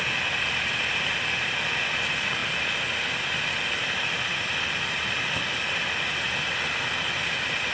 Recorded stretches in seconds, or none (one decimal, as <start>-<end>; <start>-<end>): 0.0-7.7